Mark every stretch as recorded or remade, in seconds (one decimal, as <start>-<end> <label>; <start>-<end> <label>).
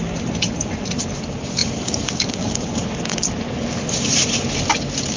0.0-5.2 recorded